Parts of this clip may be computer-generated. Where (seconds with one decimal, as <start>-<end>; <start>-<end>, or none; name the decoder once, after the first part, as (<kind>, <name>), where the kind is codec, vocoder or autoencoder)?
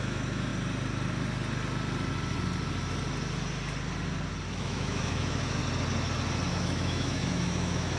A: 0.0-0.5 (autoencoder, DAC-VAE); 4.5-5.6; 6.5-8.0